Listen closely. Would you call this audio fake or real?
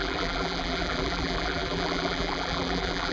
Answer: fake